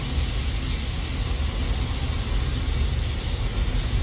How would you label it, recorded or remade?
recorded